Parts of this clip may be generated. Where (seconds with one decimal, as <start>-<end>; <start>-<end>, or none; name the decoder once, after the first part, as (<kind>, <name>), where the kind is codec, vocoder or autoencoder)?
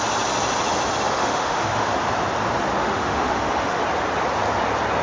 1.2-1.9 (autoencoder, DAC-VAE); 2.8-3.8